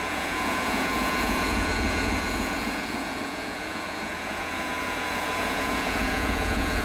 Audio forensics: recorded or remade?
remade